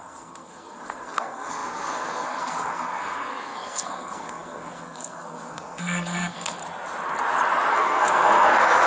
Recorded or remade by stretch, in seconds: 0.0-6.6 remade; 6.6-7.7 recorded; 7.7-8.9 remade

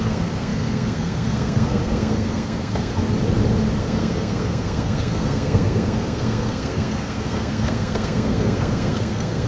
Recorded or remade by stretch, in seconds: 0.0-2.9 remade; 2.9-3.8 recorded; 3.8-9.5 remade

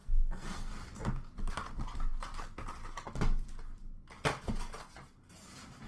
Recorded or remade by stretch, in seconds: 0.0-0.7 remade; 0.7-5.9 recorded

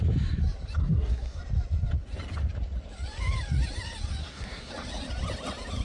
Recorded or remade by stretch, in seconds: 0.0-0.8 recorded; 0.8-1.4 remade; 1.4-4.2 recorded; 4.2-4.7 remade; 4.7-5.8 recorded